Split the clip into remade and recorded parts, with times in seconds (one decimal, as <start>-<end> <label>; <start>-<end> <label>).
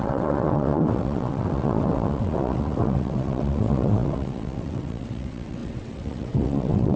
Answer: 0.0-7.0 remade